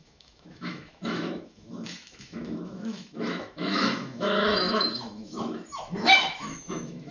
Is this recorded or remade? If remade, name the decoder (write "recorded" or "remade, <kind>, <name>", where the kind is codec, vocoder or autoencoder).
remade, autoencoder, DAC-VAE